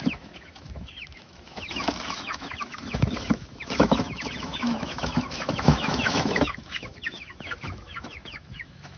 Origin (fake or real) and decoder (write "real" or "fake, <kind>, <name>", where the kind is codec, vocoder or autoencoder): fake, autoencoder, DAC-VAE